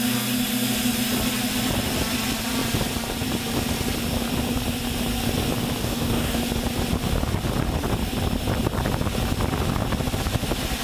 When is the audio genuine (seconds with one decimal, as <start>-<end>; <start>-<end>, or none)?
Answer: 0.0-5.8; 6.4-10.8

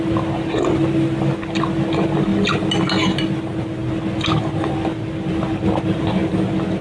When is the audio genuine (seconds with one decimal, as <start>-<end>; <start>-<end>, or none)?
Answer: 0.0-6.8

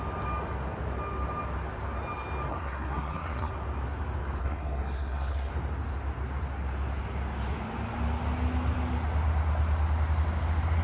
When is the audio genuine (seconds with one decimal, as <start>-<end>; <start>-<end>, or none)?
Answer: 0.0-2.5; 3.5-4.4; 5.5-10.8

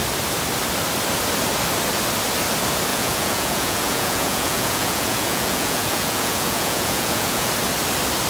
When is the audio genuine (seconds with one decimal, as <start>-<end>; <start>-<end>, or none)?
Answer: 0.0-2.9; 7.5-8.3

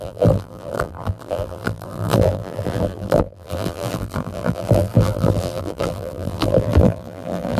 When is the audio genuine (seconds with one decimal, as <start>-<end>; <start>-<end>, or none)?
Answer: none

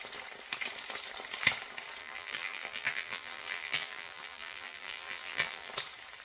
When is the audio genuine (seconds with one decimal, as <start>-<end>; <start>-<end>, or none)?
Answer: 0.0-2.0; 5.7-6.2

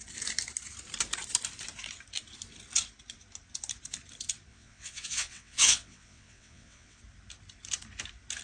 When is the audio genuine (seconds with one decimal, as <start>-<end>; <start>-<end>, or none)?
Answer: 0.0-4.5; 7.0-8.4

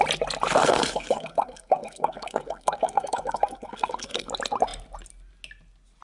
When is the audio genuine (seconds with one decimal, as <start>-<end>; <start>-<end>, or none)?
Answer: 0.0-0.6; 4.3-6.2